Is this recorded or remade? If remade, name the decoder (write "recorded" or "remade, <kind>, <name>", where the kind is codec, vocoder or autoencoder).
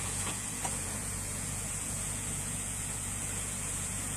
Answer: remade, vocoder, Vocos